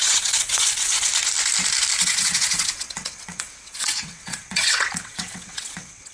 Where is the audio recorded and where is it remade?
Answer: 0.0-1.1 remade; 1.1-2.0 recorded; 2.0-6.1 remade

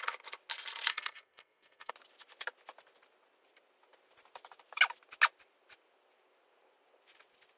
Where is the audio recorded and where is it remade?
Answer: 0.0-0.9 recorded; 0.9-1.9 remade; 1.9-7.6 recorded

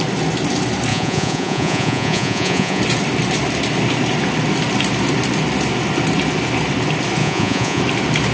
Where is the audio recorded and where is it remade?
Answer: 0.0-0.9 recorded; 0.9-2.8 remade; 2.8-7.2 recorded; 7.2-7.8 remade; 7.8-8.3 recorded

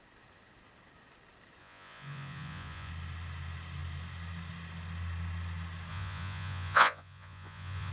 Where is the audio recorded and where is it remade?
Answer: 0.0-1.6 recorded; 1.6-2.9 remade; 2.9-5.9 recorded; 5.9-7.9 remade

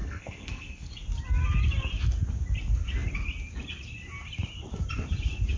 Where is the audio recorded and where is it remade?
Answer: 0.0-0.9 remade; 0.9-5.6 recorded